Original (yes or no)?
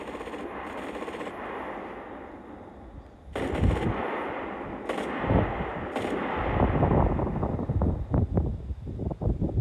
yes